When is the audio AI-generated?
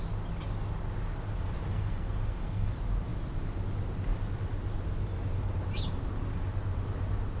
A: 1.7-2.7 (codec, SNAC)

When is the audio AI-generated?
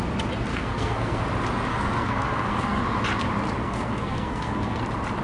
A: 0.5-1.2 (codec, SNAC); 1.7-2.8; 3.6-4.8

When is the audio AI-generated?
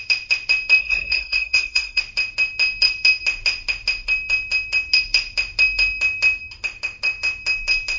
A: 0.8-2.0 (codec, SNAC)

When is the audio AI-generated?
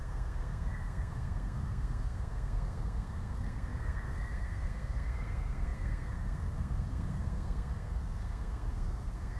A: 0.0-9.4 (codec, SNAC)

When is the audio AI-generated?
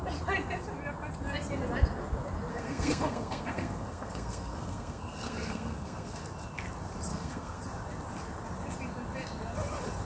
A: 2.5-6.2 (codec, SNAC); 7.1-7.6